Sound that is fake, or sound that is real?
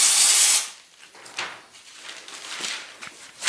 real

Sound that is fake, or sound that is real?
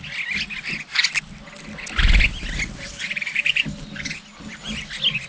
real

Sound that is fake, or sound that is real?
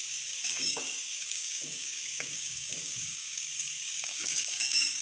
fake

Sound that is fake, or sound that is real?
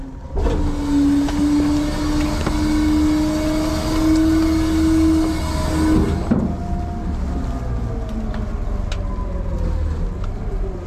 real